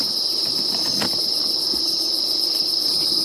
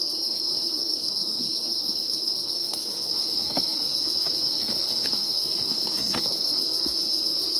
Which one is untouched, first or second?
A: first